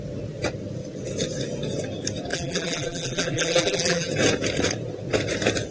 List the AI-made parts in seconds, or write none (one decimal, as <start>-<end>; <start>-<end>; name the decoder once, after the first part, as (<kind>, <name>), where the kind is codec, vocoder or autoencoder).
2.3-4.1 (vocoder, BigVGAN v2)